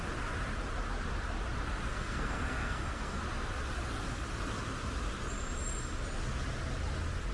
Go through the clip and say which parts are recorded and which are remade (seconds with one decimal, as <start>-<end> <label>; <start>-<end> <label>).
0.0-1.9 recorded; 1.9-3.2 remade; 3.2-7.3 recorded